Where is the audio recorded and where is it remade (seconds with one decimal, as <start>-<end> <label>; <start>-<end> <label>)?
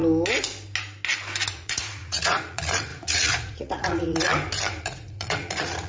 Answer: 0.0-1.5 recorded; 1.5-4.3 remade; 4.3-4.8 recorded; 4.8-5.9 remade